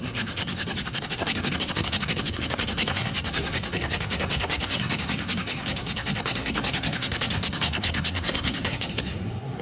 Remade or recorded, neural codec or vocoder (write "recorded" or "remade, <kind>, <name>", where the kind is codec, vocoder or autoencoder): remade, codec, SNAC